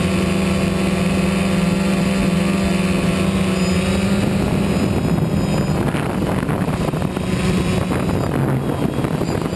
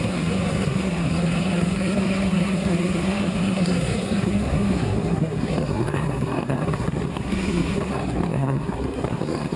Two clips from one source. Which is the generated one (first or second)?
second